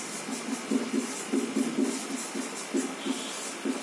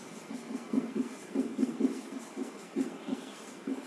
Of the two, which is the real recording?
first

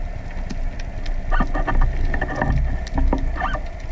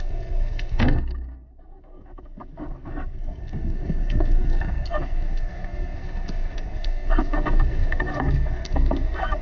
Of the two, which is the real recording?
first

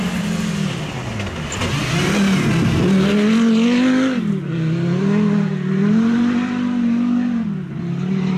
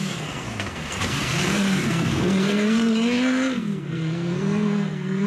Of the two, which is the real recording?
first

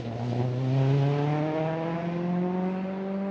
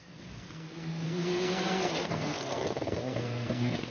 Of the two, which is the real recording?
first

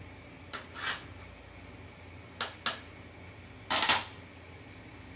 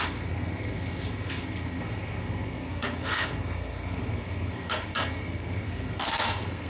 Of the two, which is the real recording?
first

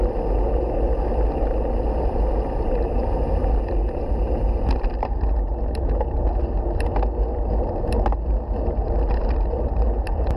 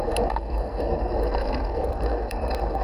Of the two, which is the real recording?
first